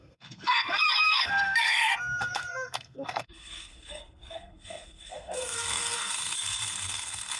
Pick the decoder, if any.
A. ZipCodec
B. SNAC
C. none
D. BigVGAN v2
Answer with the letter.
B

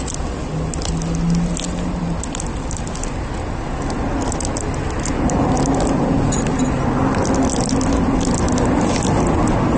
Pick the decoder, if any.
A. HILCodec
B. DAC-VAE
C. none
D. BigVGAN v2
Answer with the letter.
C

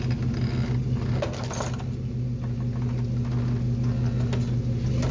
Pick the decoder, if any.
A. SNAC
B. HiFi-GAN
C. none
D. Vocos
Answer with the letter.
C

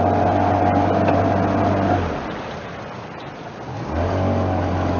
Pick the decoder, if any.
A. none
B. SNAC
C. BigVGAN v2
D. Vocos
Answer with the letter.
A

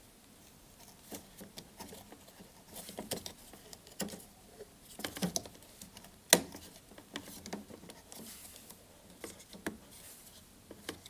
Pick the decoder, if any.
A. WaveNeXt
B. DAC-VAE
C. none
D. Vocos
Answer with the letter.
C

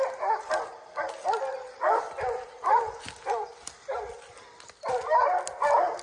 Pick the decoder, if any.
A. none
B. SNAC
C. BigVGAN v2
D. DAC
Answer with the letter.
A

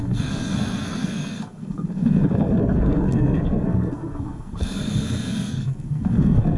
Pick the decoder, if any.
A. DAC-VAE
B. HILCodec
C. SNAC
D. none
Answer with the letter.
C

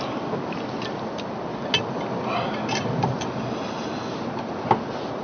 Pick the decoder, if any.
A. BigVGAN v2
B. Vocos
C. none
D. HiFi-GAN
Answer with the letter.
C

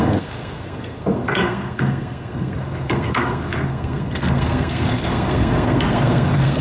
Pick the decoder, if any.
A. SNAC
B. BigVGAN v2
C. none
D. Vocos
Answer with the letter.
A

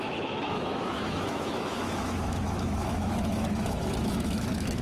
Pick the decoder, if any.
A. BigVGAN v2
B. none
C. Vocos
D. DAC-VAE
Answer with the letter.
D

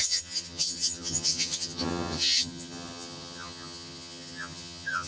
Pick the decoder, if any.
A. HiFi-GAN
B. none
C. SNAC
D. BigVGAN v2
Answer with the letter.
A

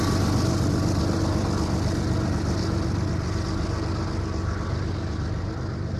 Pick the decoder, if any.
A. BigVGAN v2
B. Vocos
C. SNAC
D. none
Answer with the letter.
D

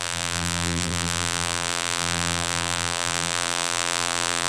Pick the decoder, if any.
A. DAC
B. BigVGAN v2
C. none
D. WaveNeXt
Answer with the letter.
B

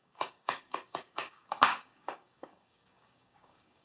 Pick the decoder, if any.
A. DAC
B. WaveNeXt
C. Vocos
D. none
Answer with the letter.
A